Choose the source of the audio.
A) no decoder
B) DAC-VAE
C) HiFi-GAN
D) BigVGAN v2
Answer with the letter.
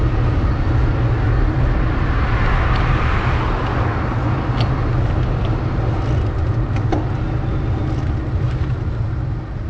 A